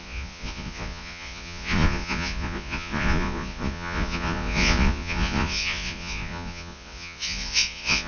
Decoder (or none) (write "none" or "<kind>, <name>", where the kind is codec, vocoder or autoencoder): vocoder, Vocos